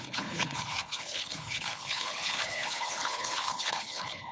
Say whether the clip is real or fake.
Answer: fake